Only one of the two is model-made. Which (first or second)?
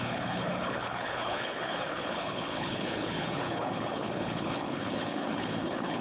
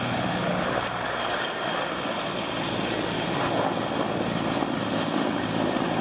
first